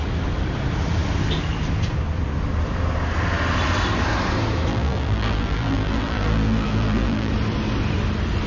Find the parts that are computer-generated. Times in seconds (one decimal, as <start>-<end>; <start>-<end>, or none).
4.7-7.3

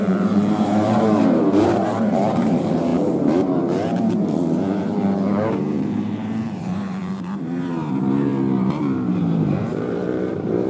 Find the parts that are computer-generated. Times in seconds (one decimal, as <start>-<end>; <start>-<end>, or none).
0.0-10.7

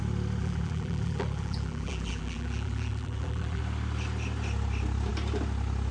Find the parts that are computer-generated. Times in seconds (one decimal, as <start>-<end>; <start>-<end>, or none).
0.4-3.6

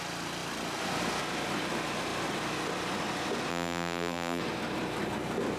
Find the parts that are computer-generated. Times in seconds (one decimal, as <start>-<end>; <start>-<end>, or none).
3.5-4.4

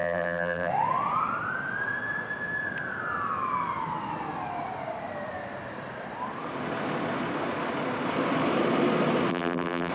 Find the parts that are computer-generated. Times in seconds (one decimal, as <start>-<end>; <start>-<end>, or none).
0.0-0.7; 9.3-9.9

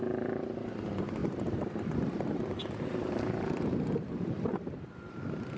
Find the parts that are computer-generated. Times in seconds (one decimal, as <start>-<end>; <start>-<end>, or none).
1.2-4.6

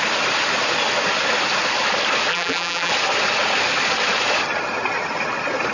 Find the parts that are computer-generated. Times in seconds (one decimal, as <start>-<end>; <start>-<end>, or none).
2.3-2.9